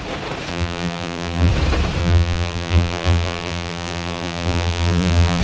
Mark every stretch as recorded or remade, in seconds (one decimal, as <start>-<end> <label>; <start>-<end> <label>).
0.0-0.5 recorded; 0.5-1.5 remade; 1.5-2.0 recorded; 2.0-5.4 remade